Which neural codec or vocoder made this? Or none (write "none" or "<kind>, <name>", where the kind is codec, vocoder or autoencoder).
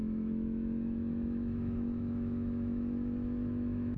autoencoder, DAC-VAE